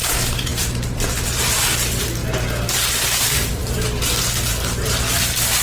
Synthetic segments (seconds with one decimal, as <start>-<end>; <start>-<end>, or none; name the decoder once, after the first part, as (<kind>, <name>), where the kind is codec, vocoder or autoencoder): 0.0-2.2 (vocoder, BigVGAN v2); 3.2-3.6; 4.2-5.6